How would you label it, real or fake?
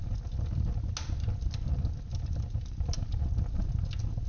real